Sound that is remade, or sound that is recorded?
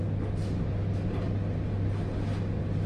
recorded